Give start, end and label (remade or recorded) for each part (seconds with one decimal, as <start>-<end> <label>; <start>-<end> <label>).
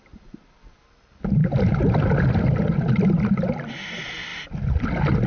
0.0-5.3 recorded